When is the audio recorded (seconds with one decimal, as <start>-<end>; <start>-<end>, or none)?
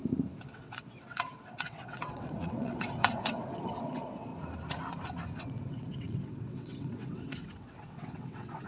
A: 0.0-0.5; 4.3-5.4